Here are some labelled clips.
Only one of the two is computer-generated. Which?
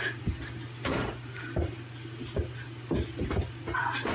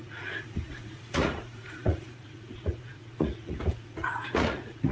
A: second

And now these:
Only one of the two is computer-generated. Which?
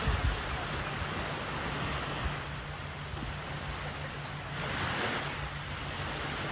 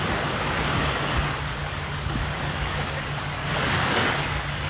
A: second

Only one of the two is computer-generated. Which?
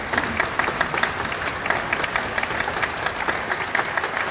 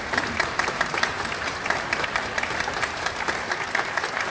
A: second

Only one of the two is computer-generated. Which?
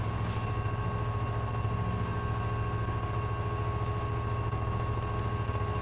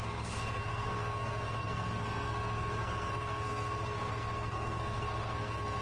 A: second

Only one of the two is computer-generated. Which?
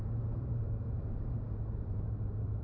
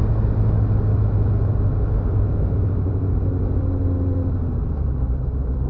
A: first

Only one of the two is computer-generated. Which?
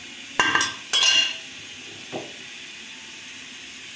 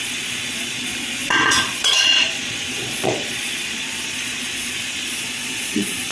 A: second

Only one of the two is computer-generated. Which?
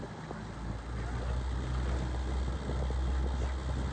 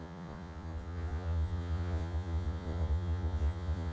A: second